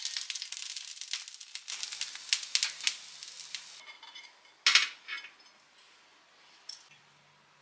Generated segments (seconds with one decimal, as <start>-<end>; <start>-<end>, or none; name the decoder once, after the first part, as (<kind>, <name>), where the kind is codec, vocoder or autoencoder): none